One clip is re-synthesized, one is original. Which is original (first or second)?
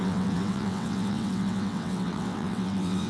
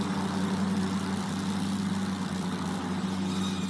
second